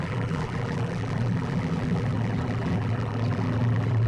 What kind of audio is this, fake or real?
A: fake